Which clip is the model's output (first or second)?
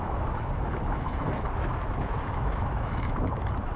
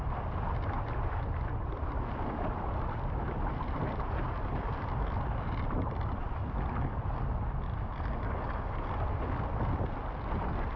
first